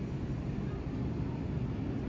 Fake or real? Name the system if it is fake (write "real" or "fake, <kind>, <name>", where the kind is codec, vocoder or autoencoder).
real